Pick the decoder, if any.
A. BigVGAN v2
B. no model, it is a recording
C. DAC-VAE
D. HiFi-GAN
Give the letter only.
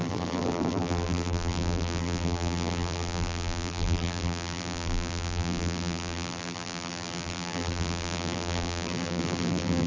A